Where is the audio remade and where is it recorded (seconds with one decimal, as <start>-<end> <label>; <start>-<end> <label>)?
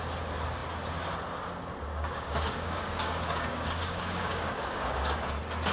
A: 0.0-1.9 recorded; 1.9-5.3 remade; 5.3-5.7 recorded